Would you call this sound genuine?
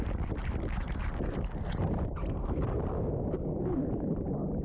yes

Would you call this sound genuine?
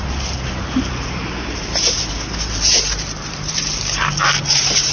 no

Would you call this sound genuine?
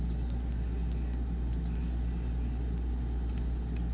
yes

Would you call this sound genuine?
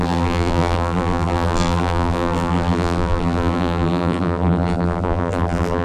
no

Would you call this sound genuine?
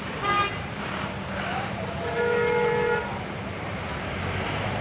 no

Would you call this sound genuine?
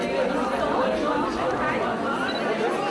yes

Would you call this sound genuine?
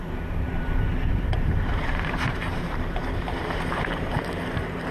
no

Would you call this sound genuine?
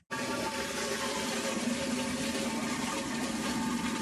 yes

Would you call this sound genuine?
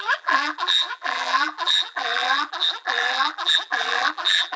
no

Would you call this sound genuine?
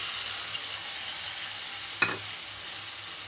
yes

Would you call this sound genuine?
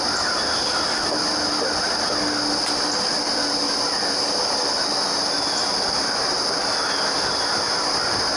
yes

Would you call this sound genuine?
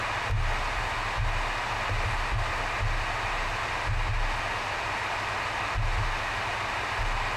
yes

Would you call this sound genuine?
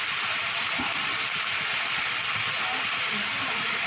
no